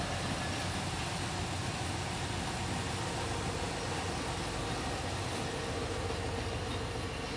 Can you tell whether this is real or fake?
real